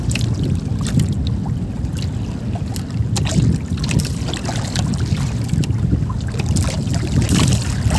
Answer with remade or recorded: recorded